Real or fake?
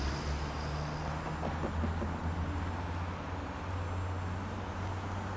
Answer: real